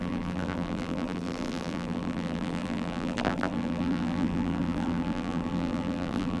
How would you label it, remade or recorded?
remade